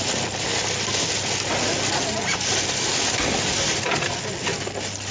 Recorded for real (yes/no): yes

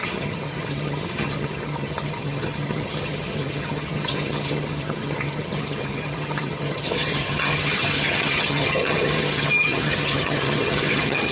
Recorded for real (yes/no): no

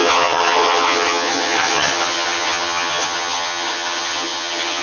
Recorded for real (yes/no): no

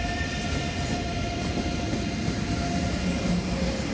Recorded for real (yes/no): yes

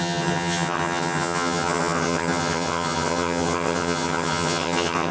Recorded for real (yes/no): no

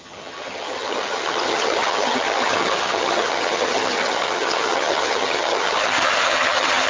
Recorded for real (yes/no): no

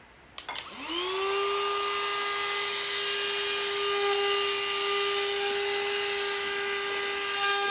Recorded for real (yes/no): yes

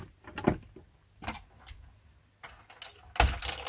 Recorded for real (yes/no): yes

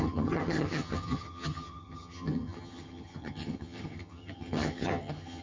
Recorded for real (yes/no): no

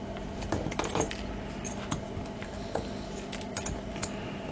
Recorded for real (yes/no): yes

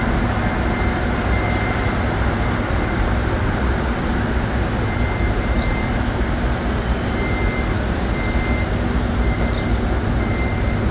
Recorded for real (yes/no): yes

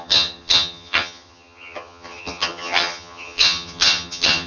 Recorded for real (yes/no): no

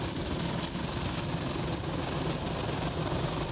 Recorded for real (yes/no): yes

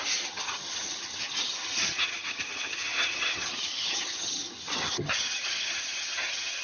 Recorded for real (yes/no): no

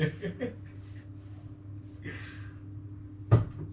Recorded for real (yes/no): yes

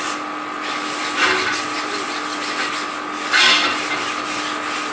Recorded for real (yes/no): yes